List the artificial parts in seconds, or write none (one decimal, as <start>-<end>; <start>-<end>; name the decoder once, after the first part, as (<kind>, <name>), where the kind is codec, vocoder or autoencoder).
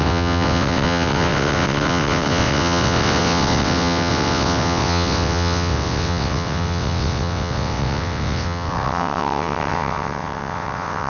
0.0-11.1 (vocoder, WaveNeXt)